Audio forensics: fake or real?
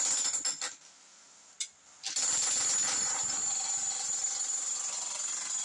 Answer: real